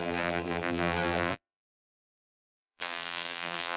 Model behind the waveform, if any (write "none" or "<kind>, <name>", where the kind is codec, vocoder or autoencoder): vocoder, BigVGAN v2